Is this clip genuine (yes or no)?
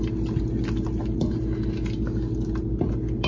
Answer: yes